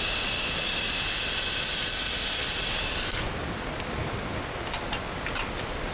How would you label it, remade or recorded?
recorded